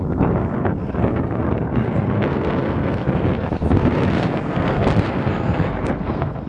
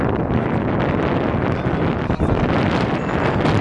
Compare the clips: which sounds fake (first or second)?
first